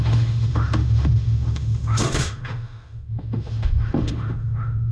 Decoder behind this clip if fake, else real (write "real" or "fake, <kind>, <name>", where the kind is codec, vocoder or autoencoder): fake, autoencoder, DAC-VAE